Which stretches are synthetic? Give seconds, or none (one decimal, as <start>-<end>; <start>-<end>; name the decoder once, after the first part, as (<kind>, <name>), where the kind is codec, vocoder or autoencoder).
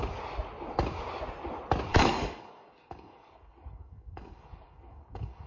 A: 1.9-5.5 (codec, DAC)